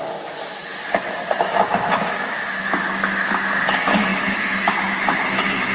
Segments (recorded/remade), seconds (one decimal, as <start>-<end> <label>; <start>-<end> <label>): 0.0-0.7 remade; 0.7-1.4 recorded; 1.4-5.7 remade